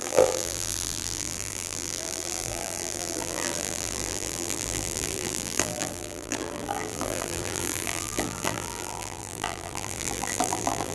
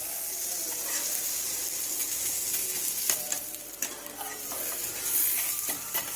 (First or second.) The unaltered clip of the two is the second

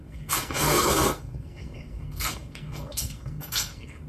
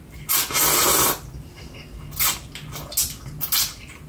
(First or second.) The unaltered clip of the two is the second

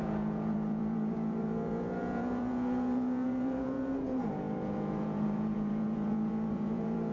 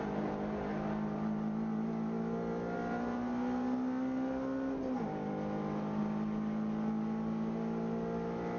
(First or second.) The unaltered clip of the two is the second